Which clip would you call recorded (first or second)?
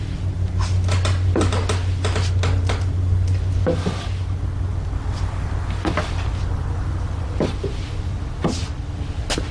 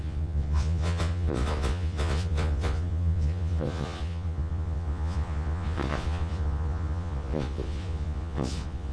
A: first